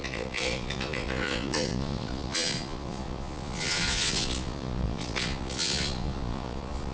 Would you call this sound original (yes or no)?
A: no